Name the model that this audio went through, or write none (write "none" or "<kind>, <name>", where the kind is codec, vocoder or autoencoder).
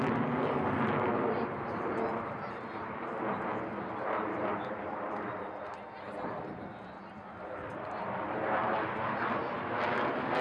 none